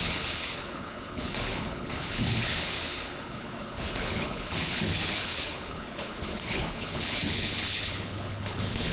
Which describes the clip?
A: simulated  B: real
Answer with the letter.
A